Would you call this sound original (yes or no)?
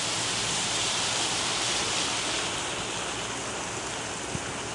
yes